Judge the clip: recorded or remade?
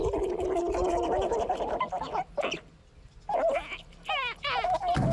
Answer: recorded